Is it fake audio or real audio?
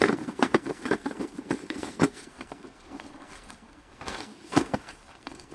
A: fake